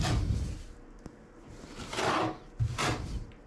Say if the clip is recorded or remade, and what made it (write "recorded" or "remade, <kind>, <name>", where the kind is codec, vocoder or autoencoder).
recorded